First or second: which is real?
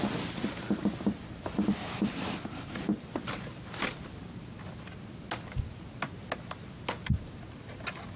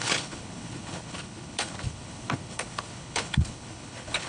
first